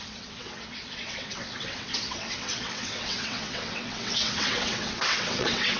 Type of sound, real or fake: fake